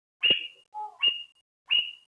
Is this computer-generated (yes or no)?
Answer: no